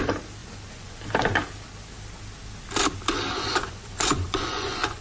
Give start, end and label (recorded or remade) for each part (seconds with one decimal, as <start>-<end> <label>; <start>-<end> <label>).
0.0-0.4 recorded; 0.4-1.0 remade; 1.0-3.3 recorded; 3.3-5.0 remade